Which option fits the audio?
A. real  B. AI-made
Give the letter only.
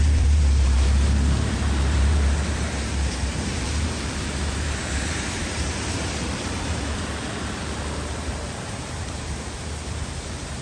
B